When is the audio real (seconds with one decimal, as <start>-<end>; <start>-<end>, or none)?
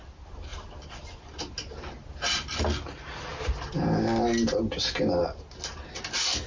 0.0-6.5